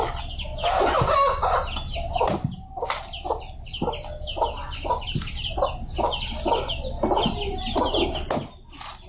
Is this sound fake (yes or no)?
no